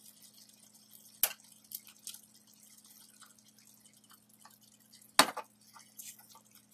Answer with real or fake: real